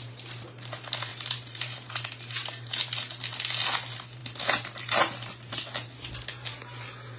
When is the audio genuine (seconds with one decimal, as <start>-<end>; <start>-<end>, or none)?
0.0-1.1; 2.8-7.2